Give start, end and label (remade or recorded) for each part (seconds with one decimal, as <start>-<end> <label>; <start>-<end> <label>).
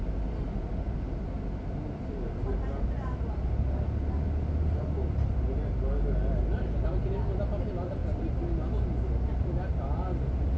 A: 0.0-10.6 recorded